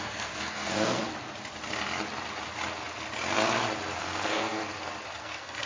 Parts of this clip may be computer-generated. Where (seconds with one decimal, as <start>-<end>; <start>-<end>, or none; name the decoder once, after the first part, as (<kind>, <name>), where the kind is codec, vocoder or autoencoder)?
0.0-1.0 (codec, SNAC); 4.0-4.6; 5.2-5.7